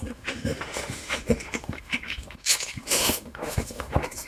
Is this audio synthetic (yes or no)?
yes